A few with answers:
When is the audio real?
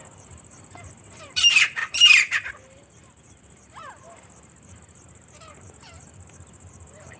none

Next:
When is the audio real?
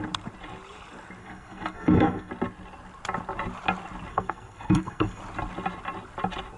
0.0-1.2; 2.3-4.1; 5.2-6.6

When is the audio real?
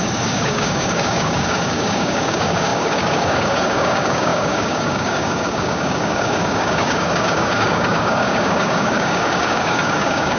none